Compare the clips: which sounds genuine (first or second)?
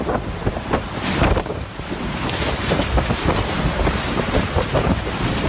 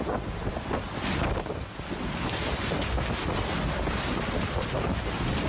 second